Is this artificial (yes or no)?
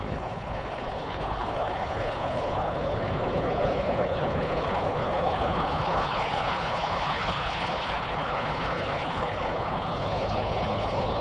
yes